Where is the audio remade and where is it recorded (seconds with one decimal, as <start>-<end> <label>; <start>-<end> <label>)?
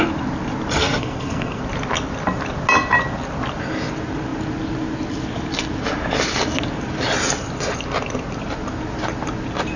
0.0-0.8 recorded; 0.8-1.6 remade; 1.6-9.8 recorded